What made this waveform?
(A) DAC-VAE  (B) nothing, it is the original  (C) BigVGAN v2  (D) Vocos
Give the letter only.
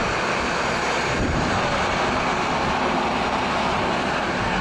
B